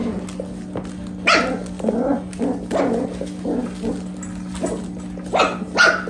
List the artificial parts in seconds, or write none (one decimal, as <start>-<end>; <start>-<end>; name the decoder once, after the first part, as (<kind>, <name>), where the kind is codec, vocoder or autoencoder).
none